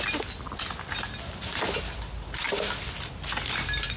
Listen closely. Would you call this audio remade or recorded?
recorded